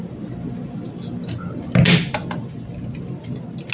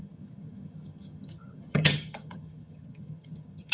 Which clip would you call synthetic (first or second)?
second